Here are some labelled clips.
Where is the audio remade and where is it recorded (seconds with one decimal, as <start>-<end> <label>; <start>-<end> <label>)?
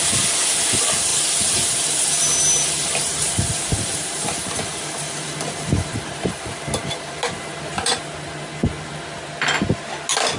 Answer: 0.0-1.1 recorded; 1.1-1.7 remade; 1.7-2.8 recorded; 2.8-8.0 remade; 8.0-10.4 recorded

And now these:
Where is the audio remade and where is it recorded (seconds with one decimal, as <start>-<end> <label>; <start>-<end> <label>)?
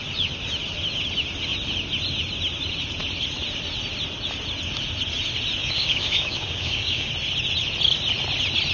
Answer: 0.0-5.6 recorded; 5.6-7.1 remade; 7.1-8.7 recorded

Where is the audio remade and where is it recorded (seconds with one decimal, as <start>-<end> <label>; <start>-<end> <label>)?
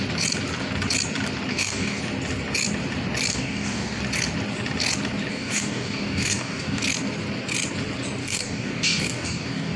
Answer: 0.0-1.5 recorded; 1.5-2.0 remade; 2.0-3.3 recorded; 3.3-4.0 remade; 4.0-5.3 recorded; 5.3-6.8 remade; 6.8-8.2 recorded; 8.2-9.8 remade